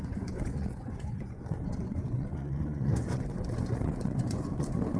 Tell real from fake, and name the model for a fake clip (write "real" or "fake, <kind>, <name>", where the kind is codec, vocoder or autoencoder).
fake, vocoder, Vocos